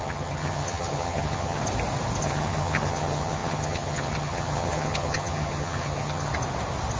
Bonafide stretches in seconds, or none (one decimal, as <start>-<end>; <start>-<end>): 1.6-2.2; 6.3-7.0